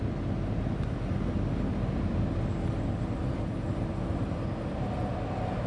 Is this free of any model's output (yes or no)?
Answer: yes